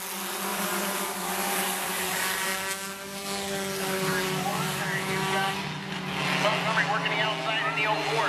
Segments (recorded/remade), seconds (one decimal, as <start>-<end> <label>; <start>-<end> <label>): 0.0-0.5 recorded; 0.5-5.5 remade; 5.5-8.3 recorded

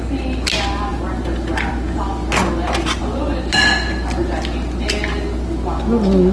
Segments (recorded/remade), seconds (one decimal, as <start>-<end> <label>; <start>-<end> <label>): 0.0-6.3 recorded